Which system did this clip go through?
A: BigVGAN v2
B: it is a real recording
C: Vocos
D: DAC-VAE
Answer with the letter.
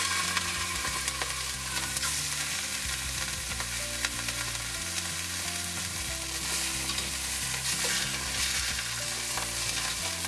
B